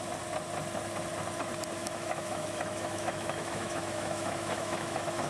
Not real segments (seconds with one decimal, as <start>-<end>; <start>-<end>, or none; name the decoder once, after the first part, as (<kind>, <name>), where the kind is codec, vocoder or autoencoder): 1.8-5.3 (autoencoder, DAC-VAE)